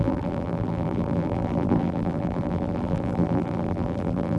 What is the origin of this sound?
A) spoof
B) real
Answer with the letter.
A